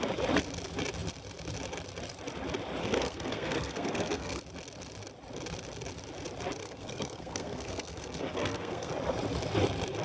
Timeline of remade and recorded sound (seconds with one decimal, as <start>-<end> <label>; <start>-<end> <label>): 0.0-2.8 recorded; 2.8-4.4 remade; 4.4-6.6 recorded; 6.6-8.9 remade; 8.9-10.0 recorded